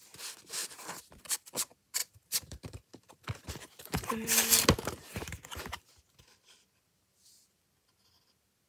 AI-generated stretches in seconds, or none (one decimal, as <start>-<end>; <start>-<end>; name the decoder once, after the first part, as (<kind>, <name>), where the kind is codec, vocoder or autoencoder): 0.6-1.2 (vocoder, BigVGAN v2); 2.0-5.8